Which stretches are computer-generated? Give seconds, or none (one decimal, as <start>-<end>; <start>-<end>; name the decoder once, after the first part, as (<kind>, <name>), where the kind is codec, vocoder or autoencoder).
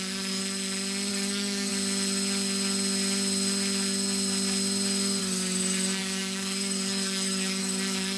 0.0-0.4 (codec, DAC); 1.1-1.7; 5.2-8.2